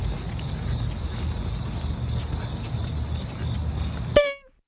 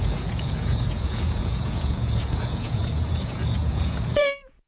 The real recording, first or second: first